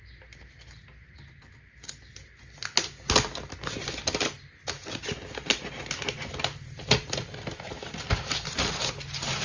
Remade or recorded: recorded